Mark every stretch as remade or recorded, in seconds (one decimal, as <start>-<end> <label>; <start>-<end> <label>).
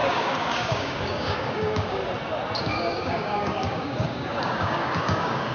0.0-2.0 remade; 2.0-2.6 recorded; 2.6-5.5 remade